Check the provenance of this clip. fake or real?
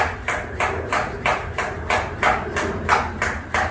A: real